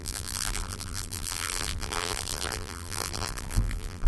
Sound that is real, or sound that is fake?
fake